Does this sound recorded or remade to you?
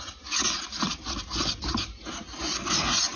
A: recorded